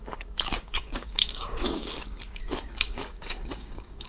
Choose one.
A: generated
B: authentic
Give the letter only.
A